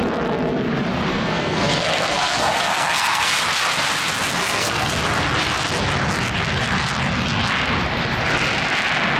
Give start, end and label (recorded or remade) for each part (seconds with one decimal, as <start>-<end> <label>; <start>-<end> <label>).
0.0-1.1 recorded; 1.1-3.4 remade; 3.4-4.4 recorded; 4.4-4.9 remade; 4.9-9.2 recorded